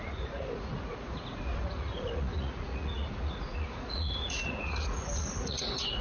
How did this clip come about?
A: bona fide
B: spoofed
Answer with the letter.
B